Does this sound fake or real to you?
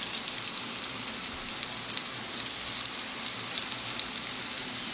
real